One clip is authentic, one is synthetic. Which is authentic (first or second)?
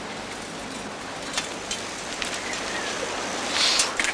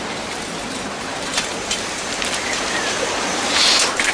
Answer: first